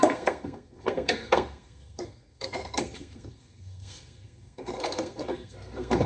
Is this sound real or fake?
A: fake